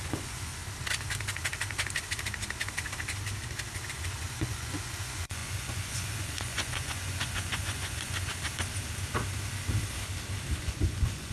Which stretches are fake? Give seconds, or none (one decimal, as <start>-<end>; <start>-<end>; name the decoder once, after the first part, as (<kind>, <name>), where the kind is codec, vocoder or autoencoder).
0.0-0.6 (vocoder, Vocos); 3.9-8.3; 10.6-11.3